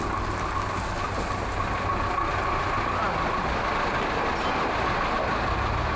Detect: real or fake real